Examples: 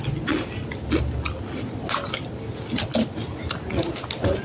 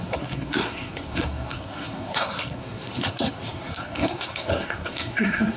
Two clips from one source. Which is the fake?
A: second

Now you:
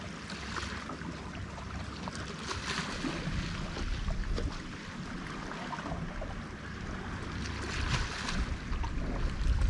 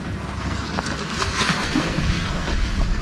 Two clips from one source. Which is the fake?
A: second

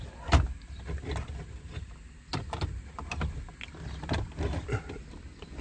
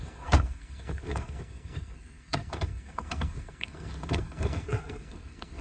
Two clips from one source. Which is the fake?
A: second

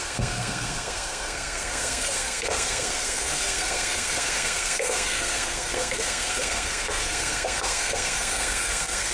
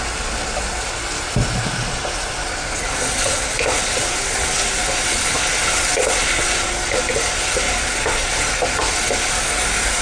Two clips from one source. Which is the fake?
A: first